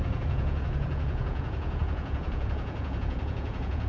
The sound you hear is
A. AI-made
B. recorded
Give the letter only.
A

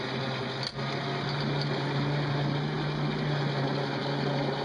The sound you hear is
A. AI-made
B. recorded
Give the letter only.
B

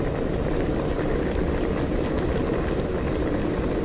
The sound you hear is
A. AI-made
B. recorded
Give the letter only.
B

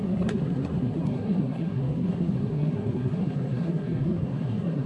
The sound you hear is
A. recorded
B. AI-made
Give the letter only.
B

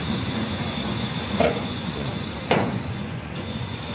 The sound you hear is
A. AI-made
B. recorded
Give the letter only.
A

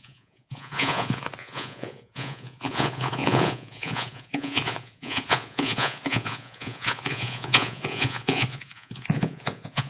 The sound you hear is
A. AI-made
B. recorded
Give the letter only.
A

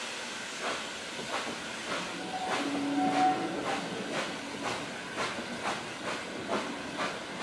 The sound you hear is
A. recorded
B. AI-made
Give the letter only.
A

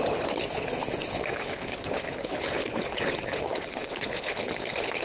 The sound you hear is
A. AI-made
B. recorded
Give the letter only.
A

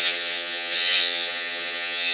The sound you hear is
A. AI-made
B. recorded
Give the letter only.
A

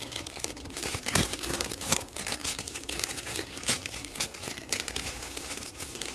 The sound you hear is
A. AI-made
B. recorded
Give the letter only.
A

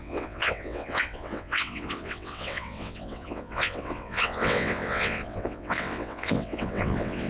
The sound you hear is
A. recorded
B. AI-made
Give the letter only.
B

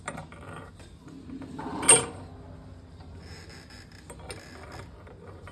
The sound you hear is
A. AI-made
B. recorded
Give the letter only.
B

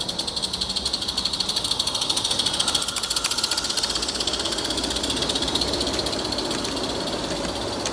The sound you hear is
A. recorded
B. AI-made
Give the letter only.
A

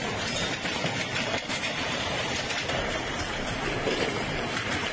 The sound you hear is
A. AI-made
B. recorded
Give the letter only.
A